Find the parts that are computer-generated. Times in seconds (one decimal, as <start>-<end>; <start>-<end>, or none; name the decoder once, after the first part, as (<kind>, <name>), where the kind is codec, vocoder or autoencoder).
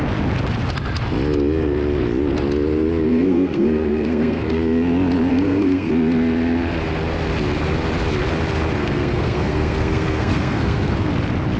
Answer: 3.1-4.6 (codec, SNAC); 5.3-5.9; 8.8-11.1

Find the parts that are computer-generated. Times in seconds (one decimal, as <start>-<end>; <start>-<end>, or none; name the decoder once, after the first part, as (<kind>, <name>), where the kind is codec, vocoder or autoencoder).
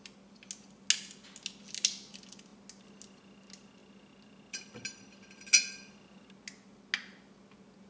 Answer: none